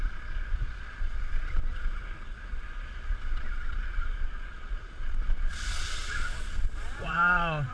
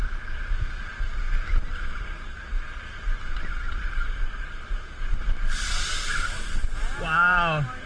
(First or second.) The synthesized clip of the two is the first